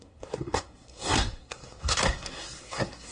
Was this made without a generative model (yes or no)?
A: no